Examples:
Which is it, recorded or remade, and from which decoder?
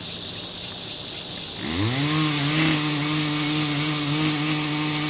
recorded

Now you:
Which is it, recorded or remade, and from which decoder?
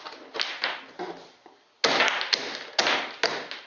recorded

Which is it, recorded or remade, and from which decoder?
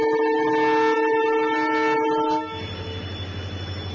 recorded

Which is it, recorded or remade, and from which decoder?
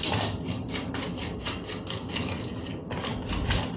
recorded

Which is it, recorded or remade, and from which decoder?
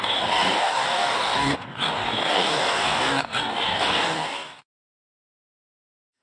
remade, codec, DAC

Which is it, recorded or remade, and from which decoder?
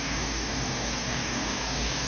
remade, codec, DAC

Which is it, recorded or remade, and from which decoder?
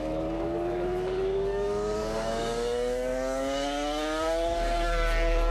remade, codec, DAC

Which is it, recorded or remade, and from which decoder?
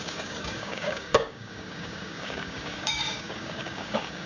remade, codec, DAC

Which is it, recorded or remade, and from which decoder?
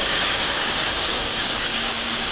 remade, codec, DAC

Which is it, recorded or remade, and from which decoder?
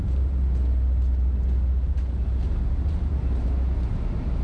recorded